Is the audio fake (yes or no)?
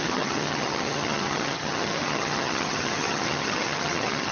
yes